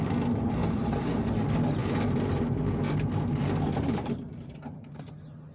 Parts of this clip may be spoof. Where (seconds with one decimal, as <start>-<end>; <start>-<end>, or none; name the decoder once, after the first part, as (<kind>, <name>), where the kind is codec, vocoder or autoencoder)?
0.6-1.3 (vocoder, BigVGAN v2); 1.8-5.1